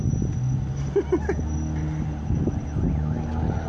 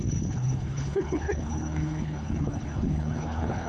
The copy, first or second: second